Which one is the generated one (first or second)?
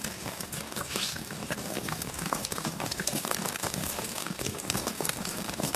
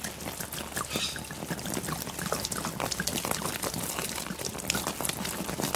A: first